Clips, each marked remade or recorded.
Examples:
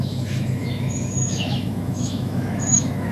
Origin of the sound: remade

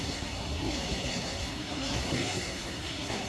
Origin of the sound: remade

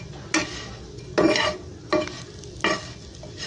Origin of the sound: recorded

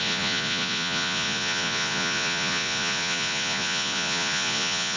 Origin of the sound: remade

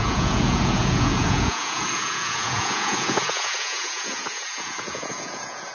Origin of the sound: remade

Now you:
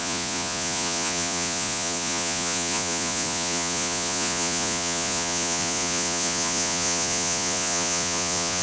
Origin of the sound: remade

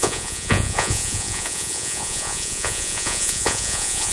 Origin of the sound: remade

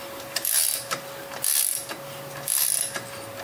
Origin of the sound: recorded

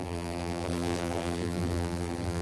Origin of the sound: remade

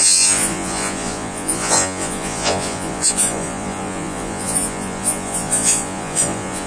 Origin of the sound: remade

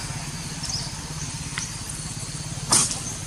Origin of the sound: recorded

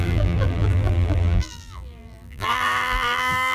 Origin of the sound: remade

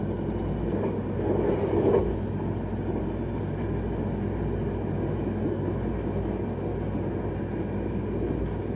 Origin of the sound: recorded